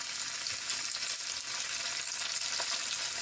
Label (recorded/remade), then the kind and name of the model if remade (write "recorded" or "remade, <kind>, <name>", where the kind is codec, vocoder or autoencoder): recorded